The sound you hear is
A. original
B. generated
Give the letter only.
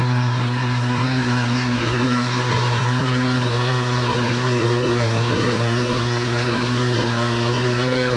B